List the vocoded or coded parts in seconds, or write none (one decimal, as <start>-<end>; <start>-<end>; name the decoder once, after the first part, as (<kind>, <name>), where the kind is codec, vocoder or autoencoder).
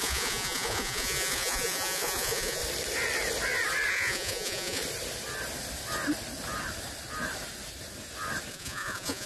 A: 0.0-2.6 (vocoder, Vocos); 3.9-4.8; 8.5-9.3